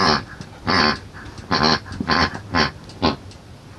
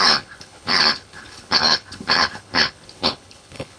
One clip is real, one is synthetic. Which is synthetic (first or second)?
second